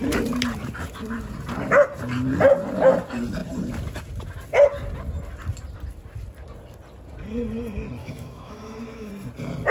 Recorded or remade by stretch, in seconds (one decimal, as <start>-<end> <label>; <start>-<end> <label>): 0.0-8.0 recorded; 8.0-9.1 remade; 9.1-9.7 recorded